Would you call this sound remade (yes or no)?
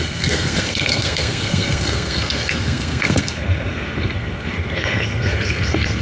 yes